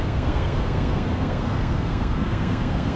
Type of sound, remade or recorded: remade